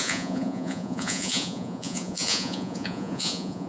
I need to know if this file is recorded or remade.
remade